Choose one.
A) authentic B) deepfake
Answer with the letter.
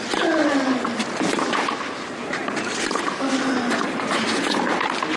A